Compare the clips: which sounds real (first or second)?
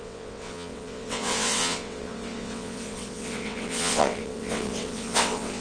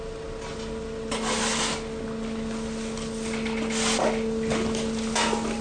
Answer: second